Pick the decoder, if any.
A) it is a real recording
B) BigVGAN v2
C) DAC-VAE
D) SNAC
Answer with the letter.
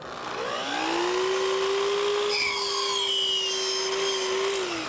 A